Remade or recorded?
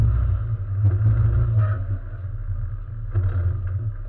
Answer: recorded